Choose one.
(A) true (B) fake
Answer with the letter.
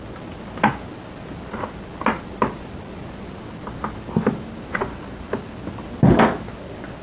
A